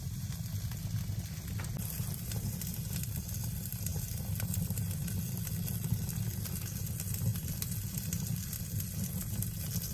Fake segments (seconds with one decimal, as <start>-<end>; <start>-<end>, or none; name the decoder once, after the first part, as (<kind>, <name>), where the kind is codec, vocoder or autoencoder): none